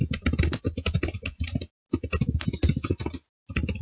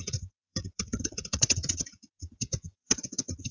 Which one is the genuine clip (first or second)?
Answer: first